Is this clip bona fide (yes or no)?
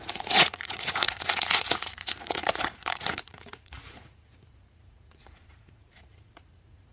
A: no